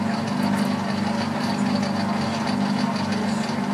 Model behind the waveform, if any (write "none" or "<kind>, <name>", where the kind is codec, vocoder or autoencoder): none